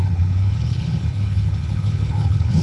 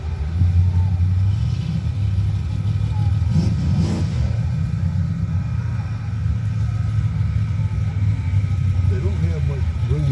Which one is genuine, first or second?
second